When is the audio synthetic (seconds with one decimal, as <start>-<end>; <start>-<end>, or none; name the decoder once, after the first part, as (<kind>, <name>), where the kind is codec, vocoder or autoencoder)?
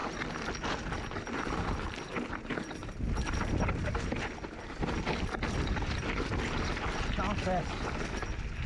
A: none